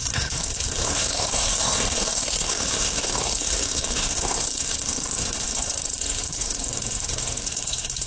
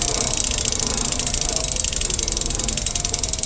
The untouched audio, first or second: second